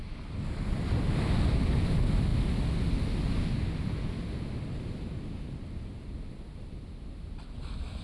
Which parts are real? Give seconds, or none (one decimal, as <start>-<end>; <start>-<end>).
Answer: 0.0-8.0